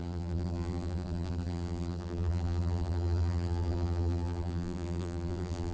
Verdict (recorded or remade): remade